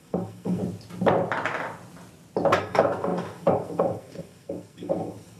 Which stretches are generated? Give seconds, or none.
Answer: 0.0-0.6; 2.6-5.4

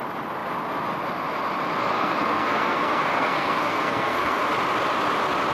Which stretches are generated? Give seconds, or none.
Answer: 1.8-4.4

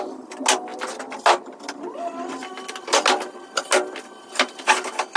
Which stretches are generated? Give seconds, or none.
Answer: none